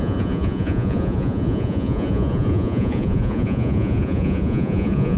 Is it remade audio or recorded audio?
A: remade